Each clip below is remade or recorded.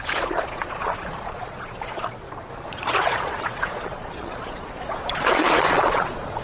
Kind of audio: remade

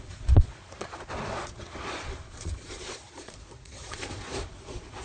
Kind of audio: remade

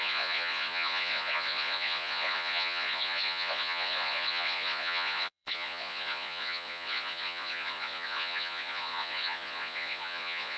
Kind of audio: remade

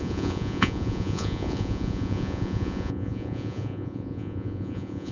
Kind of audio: remade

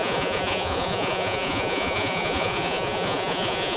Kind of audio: remade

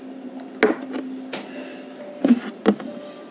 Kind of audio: recorded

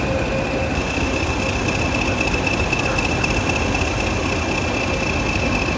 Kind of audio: recorded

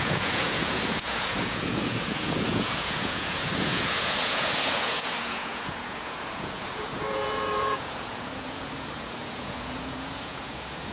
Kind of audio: remade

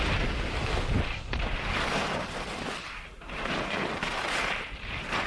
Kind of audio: recorded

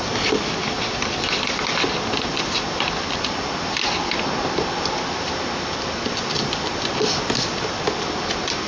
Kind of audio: recorded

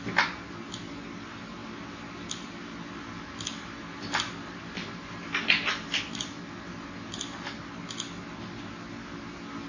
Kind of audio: recorded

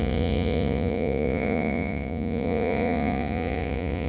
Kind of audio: remade